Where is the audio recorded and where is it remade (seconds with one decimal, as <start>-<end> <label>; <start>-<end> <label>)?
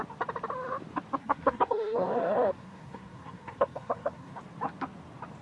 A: 0.0-1.2 recorded; 1.2-4.4 remade; 4.4-5.4 recorded